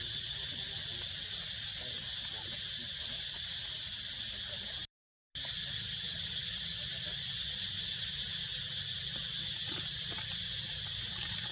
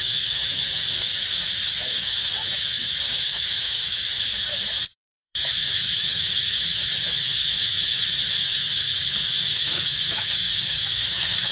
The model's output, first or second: second